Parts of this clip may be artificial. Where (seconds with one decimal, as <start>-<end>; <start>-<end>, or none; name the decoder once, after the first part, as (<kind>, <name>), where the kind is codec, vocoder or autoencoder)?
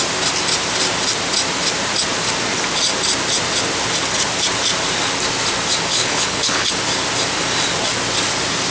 6.0-6.7 (codec, HILCodec)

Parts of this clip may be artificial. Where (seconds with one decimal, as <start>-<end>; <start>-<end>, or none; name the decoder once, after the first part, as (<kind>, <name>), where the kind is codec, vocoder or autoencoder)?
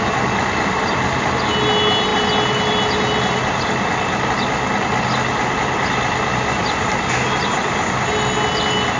none